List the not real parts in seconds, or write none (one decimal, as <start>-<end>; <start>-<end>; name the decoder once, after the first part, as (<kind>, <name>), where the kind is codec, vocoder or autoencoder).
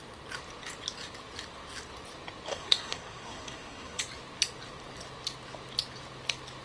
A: 2.5-4.0 (codec, SNAC)